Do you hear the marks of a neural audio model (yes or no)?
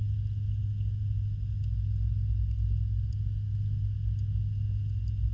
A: no